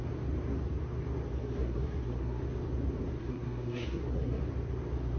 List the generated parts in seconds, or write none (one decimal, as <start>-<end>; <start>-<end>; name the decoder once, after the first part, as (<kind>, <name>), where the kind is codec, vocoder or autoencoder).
1.4-2.4 (codec, SNAC); 3.2-4.4